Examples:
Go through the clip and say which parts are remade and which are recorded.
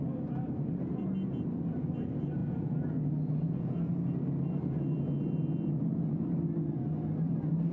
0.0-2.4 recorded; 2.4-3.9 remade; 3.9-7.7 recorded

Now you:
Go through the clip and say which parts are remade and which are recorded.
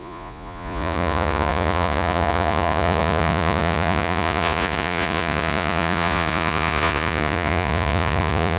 0.0-8.6 remade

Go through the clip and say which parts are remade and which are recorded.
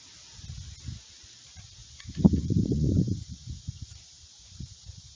0.0-1.8 recorded; 1.8-5.2 remade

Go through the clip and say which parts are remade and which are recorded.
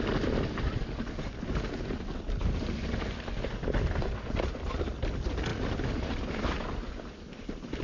0.0-7.8 recorded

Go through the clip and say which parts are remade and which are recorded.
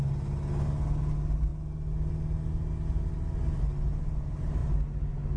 0.0-5.4 recorded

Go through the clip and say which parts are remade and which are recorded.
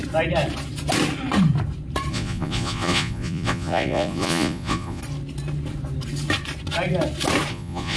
0.0-2.1 recorded; 2.1-5.0 remade; 5.0-7.5 recorded; 7.5-8.0 remade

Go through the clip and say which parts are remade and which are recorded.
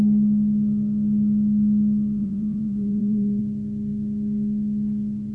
0.0-2.2 recorded; 2.2-3.4 remade; 3.4-5.3 recorded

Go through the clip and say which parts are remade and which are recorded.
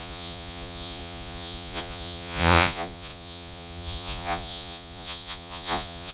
0.0-6.1 remade